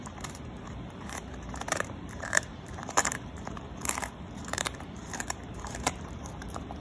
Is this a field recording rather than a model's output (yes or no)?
no